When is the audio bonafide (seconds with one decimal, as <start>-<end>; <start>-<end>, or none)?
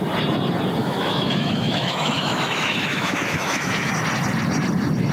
0.0-0.8; 3.9-5.1